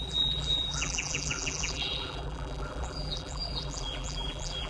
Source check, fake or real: fake